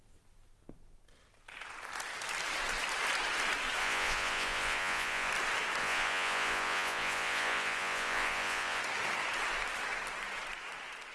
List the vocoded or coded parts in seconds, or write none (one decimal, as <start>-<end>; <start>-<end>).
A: 3.8-5.3; 5.8-8.8